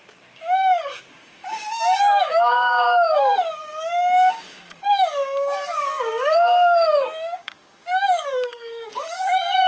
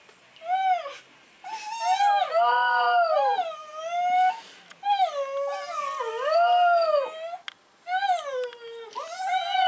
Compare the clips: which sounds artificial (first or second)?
first